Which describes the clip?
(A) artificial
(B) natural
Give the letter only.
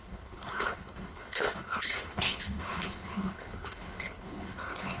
A